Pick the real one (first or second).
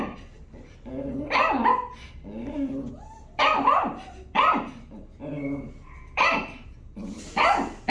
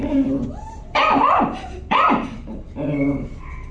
first